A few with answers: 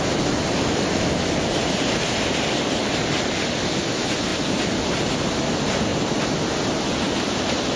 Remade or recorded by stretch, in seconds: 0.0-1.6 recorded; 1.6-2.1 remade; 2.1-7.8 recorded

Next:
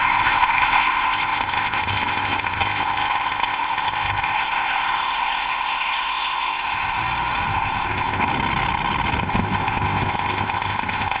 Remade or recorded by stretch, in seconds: 0.0-7.0 remade; 7.0-7.5 recorded; 7.5-8.3 remade; 8.3-9.2 recorded; 9.2-11.2 remade

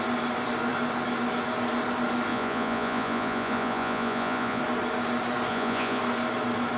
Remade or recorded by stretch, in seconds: 0.0-2.3 recorded; 2.3-4.6 remade; 4.6-5.5 recorded; 5.5-6.0 remade; 6.0-6.8 recorded